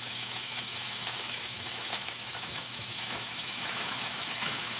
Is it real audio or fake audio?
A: fake